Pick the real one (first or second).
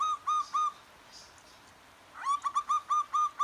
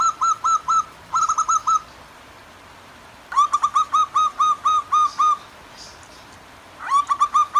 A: first